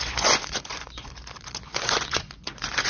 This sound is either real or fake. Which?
fake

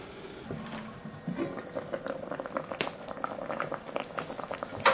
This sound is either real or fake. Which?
real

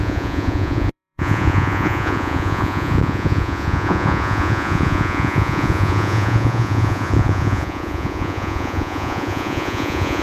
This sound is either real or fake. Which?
fake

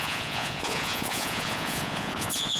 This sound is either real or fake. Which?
fake